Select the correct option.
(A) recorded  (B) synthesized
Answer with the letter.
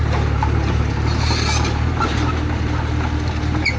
A